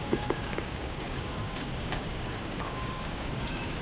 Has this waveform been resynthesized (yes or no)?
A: yes